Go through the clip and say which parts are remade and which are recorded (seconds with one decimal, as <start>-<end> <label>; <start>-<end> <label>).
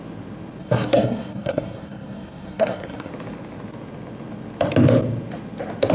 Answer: 0.0-0.6 recorded; 0.6-3.1 remade; 3.1-5.9 recorded